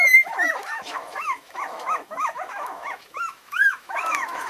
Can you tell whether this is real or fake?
fake